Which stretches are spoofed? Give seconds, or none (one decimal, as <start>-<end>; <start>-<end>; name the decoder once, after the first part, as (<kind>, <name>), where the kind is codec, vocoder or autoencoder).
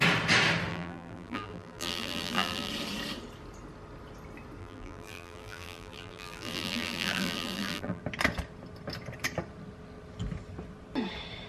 0.7-2.7 (vocoder, BigVGAN v2); 4.6-8.0